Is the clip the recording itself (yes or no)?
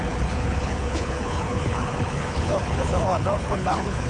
no